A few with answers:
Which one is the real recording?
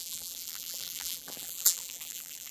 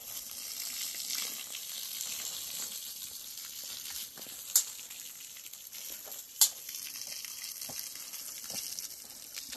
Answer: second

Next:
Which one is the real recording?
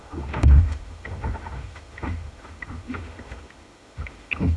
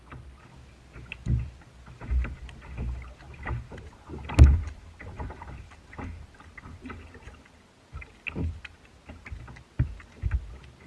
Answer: second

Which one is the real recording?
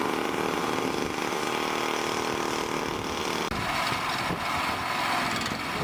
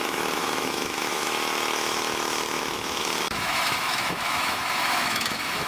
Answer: first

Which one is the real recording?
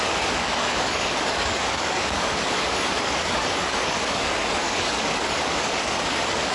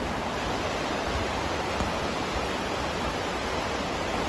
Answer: second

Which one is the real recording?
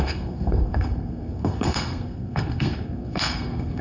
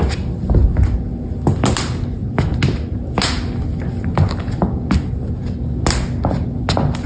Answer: second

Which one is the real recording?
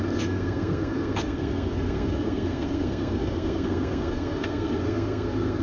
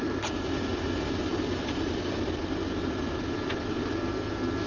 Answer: second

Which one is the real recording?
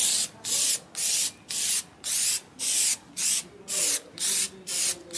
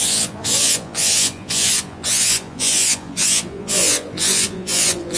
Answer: first